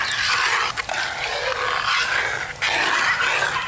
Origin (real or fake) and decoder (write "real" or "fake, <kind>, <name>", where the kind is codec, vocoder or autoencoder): real